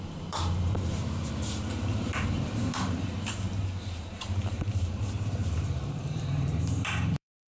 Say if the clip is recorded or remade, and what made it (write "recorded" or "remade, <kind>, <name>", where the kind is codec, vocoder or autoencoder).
remade, vocoder, BigVGAN v2